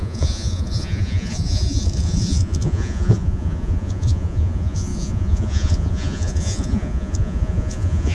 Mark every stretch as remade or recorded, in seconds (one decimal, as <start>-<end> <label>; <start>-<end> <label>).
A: 0.0-8.1 remade